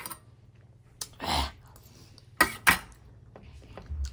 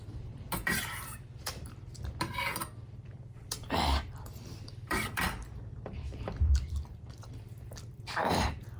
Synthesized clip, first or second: second